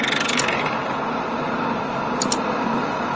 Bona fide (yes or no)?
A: yes